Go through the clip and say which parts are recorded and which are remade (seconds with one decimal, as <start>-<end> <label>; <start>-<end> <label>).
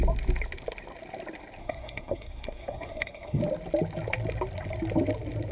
0.0-1.6 recorded; 1.6-3.4 remade; 3.4-5.5 recorded